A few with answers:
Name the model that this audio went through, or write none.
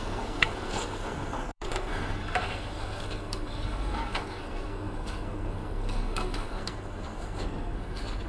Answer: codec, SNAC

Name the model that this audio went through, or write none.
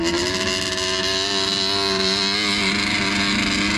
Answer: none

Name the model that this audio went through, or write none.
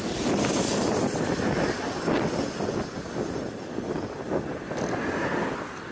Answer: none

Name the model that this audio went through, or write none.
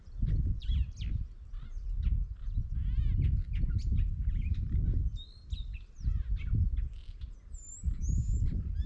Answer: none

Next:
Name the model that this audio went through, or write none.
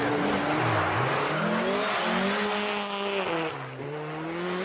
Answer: none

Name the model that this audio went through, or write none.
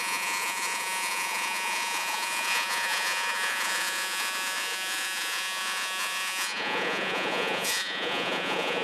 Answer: vocoder, Vocos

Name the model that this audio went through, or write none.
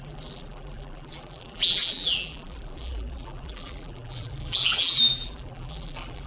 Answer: vocoder, BigVGAN v2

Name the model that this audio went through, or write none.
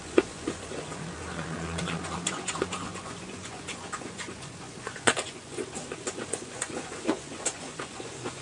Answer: vocoder, Vocos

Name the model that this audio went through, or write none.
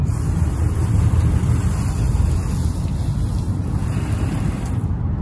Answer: vocoder, BigVGAN v2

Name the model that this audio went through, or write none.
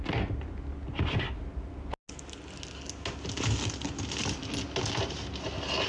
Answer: none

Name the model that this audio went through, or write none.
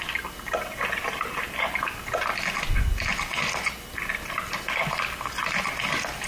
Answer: none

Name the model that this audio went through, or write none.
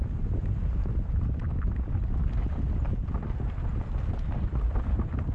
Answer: none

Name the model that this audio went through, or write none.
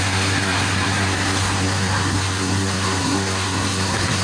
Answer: codec, SNAC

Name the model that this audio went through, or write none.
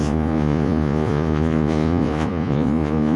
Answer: vocoder, Vocos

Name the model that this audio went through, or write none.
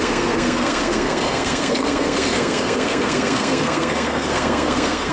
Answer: codec, SNAC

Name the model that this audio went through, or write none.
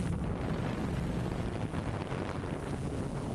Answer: none